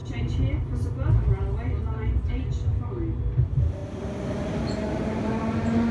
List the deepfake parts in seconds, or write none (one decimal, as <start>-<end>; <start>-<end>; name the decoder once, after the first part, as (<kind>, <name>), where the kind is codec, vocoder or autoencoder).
none